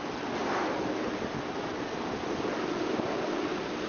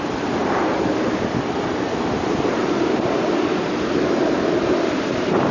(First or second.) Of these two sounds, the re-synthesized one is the second